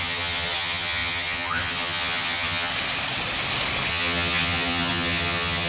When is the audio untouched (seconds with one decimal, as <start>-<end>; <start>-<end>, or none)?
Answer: 2.7-3.9